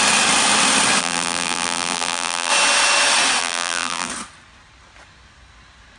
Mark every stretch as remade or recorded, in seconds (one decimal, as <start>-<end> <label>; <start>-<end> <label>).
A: 0.0-1.0 recorded; 1.0-2.5 remade; 2.5-3.4 recorded; 3.4-4.1 remade; 4.1-6.0 recorded